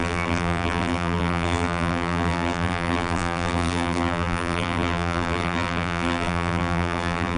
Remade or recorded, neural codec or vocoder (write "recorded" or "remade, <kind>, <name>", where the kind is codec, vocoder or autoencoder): remade, vocoder, BigVGAN v2